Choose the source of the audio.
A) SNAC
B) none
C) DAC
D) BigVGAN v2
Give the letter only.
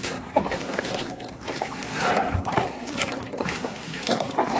A